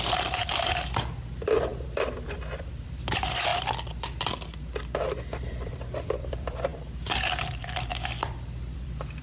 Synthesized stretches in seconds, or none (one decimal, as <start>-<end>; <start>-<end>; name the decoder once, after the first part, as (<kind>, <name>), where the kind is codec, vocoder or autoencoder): 0.0-3.5 (vocoder, BigVGAN v2); 5.2-9.2